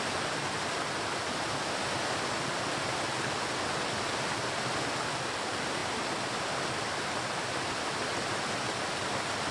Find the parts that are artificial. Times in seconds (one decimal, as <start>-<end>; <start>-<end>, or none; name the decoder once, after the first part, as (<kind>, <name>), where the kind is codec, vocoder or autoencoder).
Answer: none